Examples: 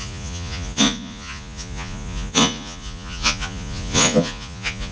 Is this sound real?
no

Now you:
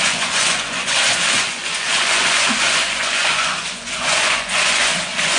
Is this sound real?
no